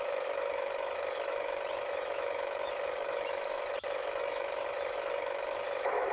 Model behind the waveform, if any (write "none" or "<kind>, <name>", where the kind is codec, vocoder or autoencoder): autoencoder, DAC-VAE